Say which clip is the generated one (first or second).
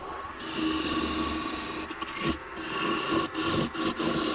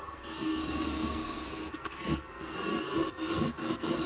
second